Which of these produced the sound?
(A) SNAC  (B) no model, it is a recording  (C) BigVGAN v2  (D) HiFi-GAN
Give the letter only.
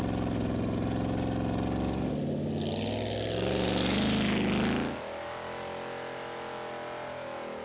B